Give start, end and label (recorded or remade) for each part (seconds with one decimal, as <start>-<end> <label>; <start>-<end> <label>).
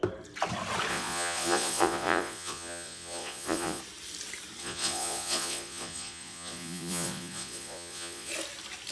0.0-0.9 recorded; 0.9-3.8 remade; 3.8-4.6 recorded; 4.6-8.3 remade; 8.3-8.9 recorded